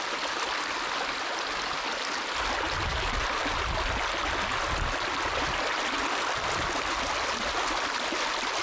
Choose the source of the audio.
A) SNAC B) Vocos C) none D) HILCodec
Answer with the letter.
C